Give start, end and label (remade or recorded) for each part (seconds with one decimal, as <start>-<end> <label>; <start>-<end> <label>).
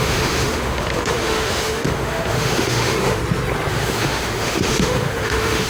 0.0-3.2 remade; 3.2-3.7 recorded; 3.7-5.7 remade